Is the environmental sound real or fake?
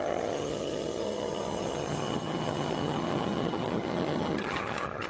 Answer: fake